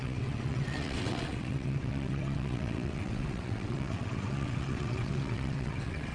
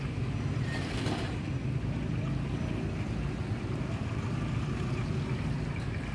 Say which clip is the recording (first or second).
second